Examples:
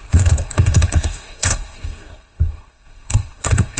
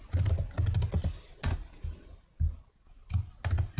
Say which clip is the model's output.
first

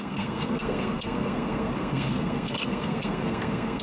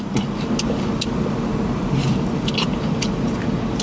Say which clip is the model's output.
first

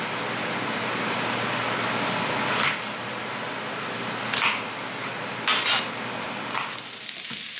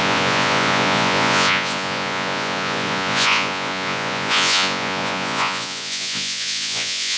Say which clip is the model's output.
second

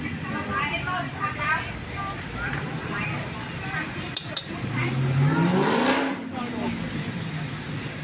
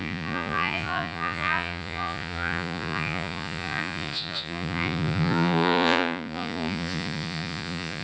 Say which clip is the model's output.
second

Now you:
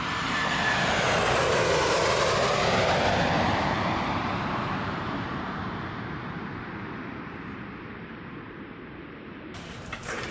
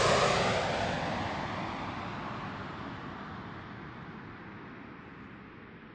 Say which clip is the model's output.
first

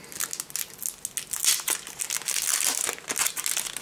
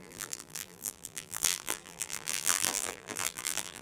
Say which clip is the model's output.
second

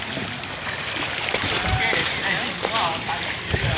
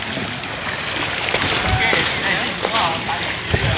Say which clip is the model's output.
first